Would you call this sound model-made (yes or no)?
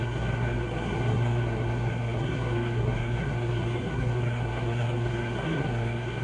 yes